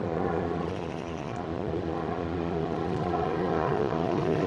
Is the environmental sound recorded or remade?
remade